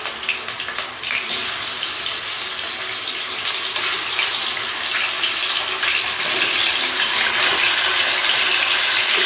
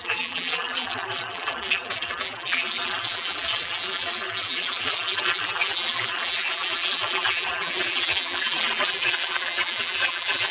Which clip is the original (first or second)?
first